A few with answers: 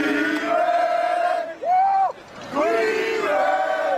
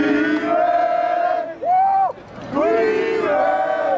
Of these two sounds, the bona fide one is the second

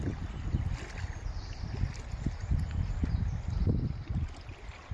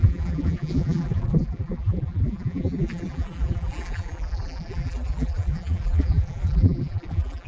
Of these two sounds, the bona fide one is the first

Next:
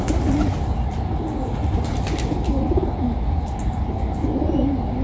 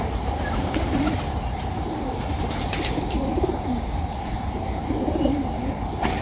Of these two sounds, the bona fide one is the first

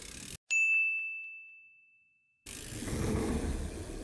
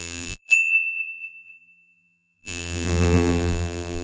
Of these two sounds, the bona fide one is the first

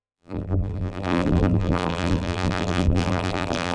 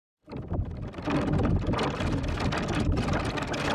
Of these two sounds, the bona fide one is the second